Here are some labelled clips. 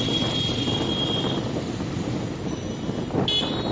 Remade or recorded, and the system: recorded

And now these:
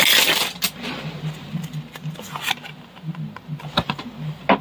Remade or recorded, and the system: recorded